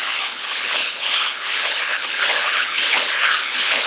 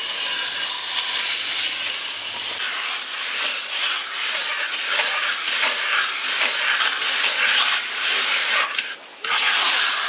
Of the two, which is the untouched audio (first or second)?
second